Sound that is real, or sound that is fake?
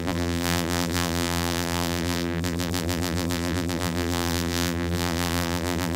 fake